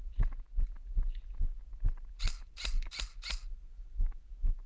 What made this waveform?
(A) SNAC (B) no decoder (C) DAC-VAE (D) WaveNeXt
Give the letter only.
B